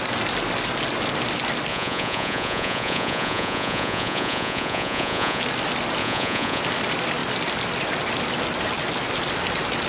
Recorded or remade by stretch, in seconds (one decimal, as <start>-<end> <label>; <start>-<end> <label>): 0.0-1.7 recorded; 1.7-5.4 remade; 5.4-6.0 recorded; 6.0-6.6 remade; 6.6-9.9 recorded